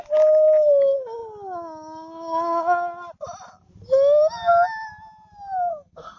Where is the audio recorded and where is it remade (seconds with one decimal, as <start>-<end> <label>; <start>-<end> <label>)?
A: 0.0-5.7 recorded; 5.7-6.2 remade